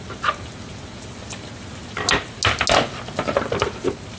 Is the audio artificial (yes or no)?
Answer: no